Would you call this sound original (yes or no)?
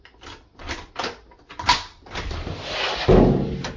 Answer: yes